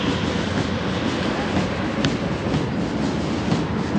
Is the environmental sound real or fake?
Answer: real